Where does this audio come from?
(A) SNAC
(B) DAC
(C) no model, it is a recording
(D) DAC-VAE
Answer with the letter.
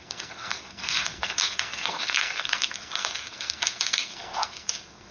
A